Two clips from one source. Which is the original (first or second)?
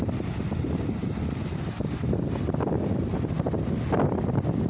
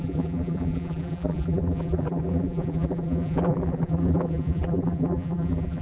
first